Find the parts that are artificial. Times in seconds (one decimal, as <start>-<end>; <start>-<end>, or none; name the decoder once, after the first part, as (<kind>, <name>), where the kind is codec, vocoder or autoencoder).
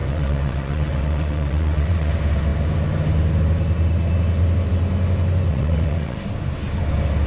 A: 0.0-2.1 (vocoder, WaveNeXt); 5.5-6.2